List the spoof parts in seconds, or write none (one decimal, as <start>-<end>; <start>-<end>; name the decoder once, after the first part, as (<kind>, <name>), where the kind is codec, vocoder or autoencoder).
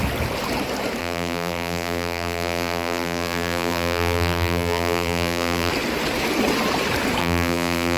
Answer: 1.0-5.7 (vocoder, BigVGAN v2); 7.2-8.0